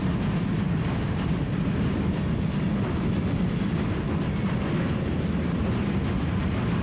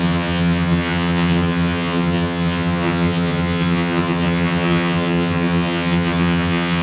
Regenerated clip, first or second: second